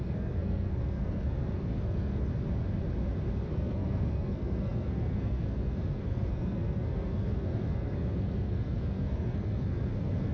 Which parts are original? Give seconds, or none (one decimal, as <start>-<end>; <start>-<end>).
2.3-3.5